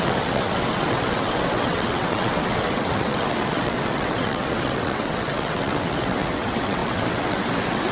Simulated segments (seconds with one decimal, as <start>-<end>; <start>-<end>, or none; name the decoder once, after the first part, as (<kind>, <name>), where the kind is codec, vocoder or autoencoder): 0.0-7.9 (vocoder, WaveNeXt)